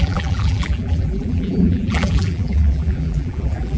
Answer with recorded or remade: remade